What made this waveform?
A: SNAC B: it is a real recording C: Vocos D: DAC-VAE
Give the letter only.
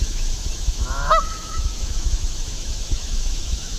D